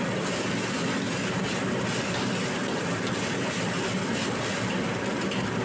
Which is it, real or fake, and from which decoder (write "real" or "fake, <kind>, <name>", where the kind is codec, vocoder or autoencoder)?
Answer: real